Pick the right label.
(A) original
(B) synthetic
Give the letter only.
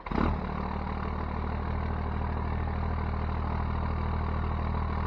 A